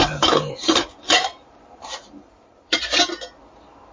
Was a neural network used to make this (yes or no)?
yes